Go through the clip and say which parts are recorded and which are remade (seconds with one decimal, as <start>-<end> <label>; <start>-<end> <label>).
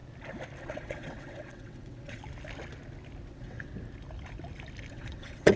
0.0-0.6 recorded; 0.6-2.2 remade; 2.2-3.3 recorded; 3.3-3.7 remade; 3.7-4.9 recorded; 4.9-5.6 remade